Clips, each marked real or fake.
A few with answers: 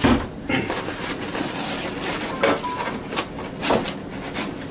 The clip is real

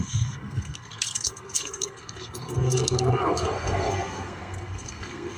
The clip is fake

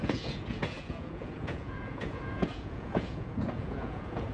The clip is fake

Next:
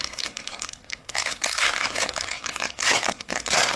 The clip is fake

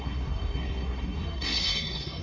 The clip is fake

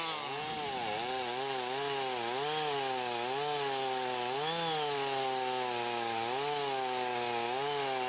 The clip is real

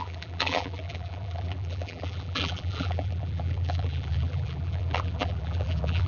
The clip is fake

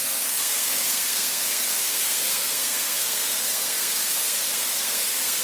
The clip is fake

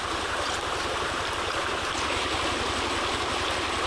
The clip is real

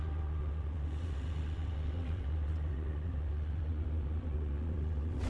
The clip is fake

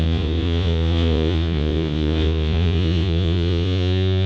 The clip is fake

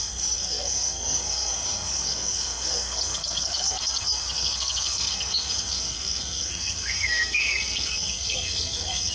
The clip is fake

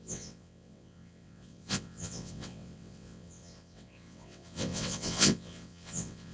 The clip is fake